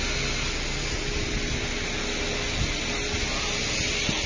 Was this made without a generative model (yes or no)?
yes